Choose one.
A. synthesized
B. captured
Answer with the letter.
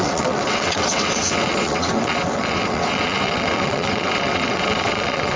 A